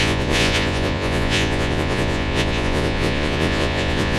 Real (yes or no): no